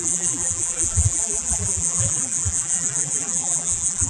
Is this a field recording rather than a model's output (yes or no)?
no